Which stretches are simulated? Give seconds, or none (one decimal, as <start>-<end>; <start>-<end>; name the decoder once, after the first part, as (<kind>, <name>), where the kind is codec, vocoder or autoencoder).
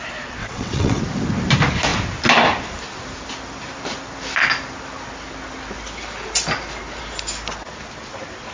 0.4-1.0 (vocoder, WaveNeXt)